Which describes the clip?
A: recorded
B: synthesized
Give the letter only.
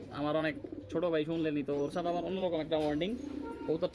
B